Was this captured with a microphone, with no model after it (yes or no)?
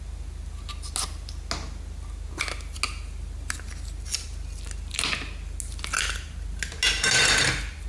yes